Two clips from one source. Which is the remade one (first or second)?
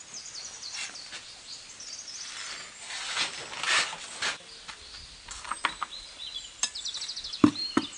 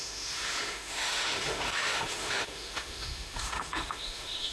second